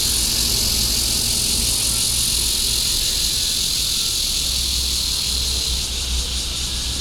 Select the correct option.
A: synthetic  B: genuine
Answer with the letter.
B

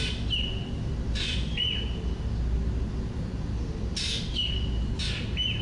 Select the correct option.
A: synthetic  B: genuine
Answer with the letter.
B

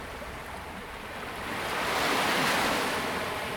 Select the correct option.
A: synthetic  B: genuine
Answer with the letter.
B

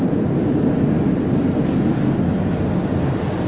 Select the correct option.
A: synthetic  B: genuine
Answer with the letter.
B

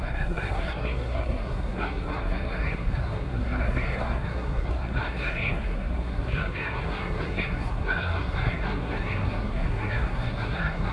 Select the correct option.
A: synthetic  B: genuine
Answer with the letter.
A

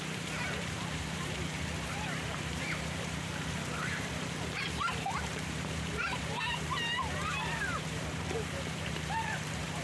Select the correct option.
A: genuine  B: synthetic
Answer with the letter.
B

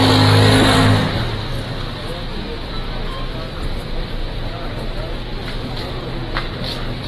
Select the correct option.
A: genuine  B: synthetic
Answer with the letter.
A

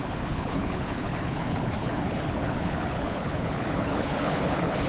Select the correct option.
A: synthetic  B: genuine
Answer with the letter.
A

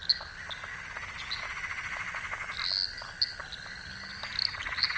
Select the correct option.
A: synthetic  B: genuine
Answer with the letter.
B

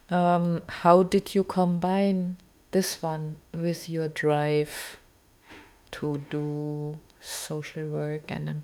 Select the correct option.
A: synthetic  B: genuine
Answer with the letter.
A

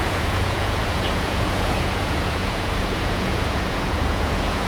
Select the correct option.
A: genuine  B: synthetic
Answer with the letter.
B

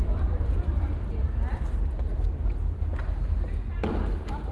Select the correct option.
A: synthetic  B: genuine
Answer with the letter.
B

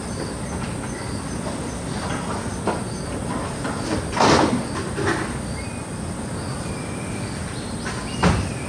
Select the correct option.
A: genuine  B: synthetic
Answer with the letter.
A